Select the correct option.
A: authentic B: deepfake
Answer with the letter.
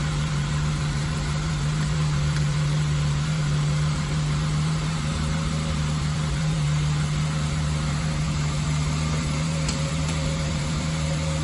B